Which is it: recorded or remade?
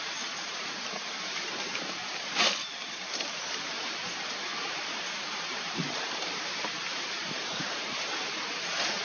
remade